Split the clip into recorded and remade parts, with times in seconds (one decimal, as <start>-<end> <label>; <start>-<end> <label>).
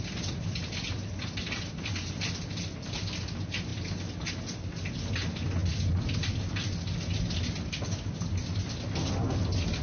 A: 0.0-9.8 recorded